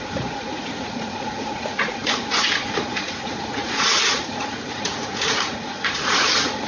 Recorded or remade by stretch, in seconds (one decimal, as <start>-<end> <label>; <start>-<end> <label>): 0.0-6.7 remade